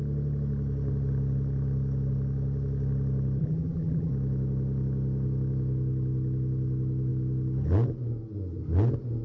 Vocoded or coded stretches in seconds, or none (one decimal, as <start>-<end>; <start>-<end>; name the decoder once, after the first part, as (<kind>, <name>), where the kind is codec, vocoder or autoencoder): 3.4-4.1 (vocoder, BigVGAN v2)